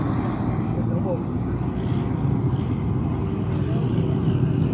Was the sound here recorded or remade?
recorded